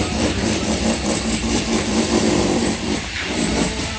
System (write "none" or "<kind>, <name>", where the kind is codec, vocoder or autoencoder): vocoder, BigVGAN v2